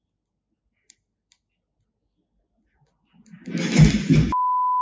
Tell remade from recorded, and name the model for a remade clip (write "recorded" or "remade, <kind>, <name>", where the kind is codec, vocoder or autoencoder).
recorded